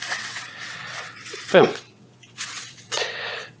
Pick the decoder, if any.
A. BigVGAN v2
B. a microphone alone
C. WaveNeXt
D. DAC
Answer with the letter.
C